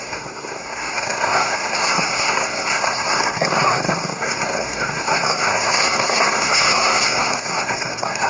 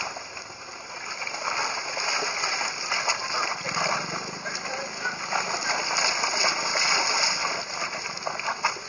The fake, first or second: first